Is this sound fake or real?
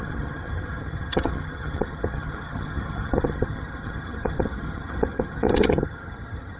fake